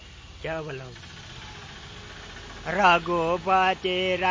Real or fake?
real